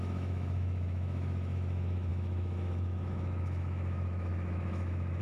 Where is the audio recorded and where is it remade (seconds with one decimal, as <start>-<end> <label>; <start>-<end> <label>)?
0.0-5.2 remade